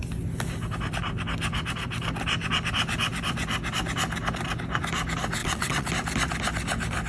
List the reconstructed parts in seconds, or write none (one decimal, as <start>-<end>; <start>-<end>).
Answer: 5.4-5.9